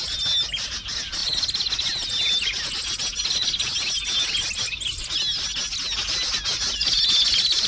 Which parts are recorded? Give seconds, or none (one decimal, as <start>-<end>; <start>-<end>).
0.0-7.7